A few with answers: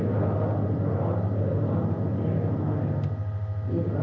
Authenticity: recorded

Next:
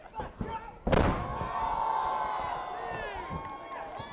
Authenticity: recorded